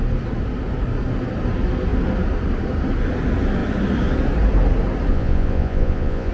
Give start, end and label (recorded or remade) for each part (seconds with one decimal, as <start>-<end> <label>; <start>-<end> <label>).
0.0-5.1 recorded; 5.1-6.3 remade